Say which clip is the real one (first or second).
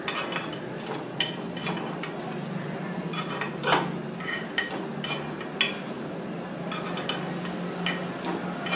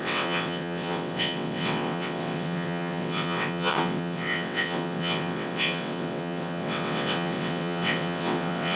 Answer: first